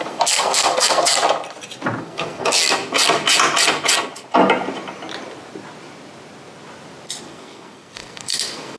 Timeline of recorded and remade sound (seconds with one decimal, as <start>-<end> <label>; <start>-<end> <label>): 0.0-1.1 remade; 1.1-2.0 recorded; 2.0-2.6 remade; 2.6-7.2 recorded; 7.2-8.8 remade